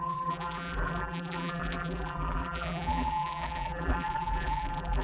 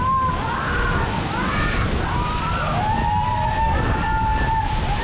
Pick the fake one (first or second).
first